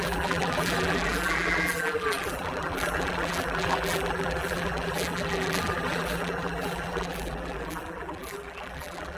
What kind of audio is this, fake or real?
fake